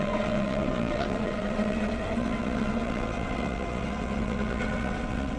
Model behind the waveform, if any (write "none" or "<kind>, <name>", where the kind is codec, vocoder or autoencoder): vocoder, WaveNeXt